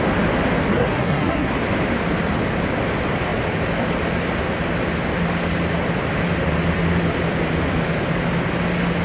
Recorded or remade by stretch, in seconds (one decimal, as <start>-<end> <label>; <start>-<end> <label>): 0.0-0.7 recorded; 0.7-1.5 remade; 1.5-9.0 recorded